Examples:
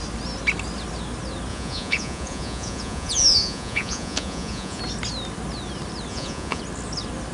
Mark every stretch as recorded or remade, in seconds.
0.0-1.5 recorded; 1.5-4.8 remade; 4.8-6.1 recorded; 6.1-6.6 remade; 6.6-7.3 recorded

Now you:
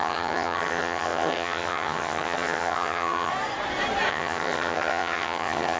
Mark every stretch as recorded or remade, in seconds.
0.0-3.3 remade; 3.3-4.1 recorded; 4.1-5.8 remade

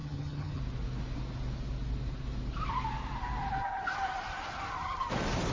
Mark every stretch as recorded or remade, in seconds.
0.0-0.6 remade; 0.6-5.5 recorded

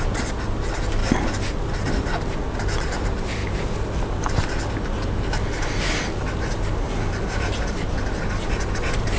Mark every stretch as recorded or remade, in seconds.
0.0-9.2 recorded